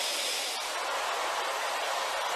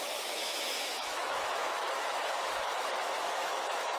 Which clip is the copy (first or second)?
second